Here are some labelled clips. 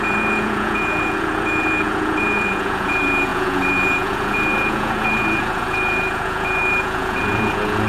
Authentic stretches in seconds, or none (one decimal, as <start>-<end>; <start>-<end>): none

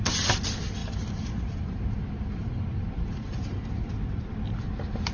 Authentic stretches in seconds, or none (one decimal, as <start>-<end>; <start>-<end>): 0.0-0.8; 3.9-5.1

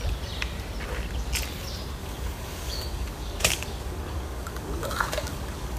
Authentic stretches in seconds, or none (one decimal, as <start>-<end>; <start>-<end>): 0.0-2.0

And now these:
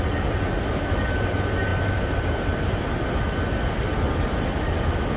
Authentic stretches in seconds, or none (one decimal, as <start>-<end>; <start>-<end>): 0.0-5.2

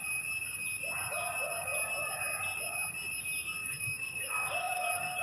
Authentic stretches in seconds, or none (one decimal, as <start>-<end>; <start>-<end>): 0.0-3.6

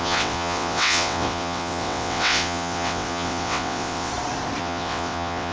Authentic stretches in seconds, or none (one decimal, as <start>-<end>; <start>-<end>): 4.1-4.6

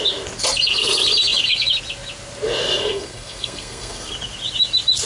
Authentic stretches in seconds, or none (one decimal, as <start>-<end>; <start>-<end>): 0.0-2.6; 4.1-5.1

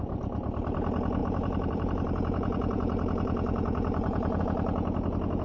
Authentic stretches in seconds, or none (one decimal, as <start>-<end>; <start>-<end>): 0.0-1.2; 4.4-5.4